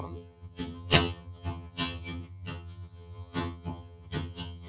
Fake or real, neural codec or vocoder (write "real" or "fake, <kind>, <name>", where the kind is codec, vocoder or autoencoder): fake, vocoder, HiFi-GAN